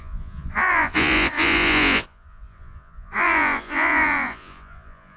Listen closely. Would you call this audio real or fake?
fake